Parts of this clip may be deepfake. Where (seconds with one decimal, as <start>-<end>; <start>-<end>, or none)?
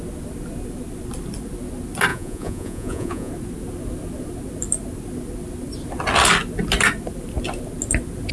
2.1-3.3